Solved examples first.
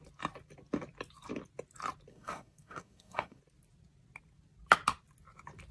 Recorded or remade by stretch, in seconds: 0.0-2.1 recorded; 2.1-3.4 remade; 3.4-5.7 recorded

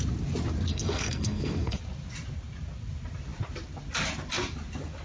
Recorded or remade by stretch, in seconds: 0.0-0.7 recorded; 0.7-1.8 remade; 1.8-5.0 recorded

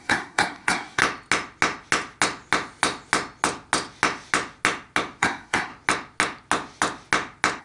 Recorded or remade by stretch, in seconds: 0.0-1.0 remade; 1.0-5.2 recorded; 5.2-5.7 remade; 5.7-7.6 recorded

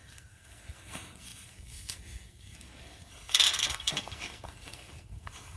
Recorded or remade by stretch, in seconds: 0.0-5.6 remade